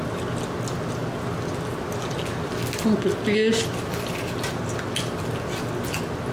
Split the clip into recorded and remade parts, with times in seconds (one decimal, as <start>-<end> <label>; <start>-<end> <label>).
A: 0.0-6.3 recorded